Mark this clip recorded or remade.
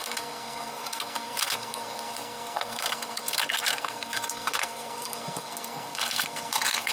remade